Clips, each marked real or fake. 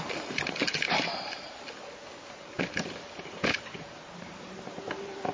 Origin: fake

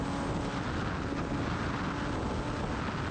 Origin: real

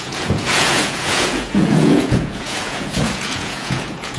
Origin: fake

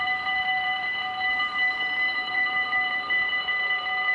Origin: fake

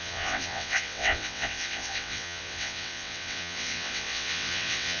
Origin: fake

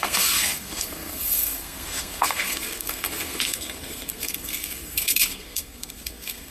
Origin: fake